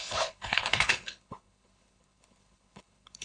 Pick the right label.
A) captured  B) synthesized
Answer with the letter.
B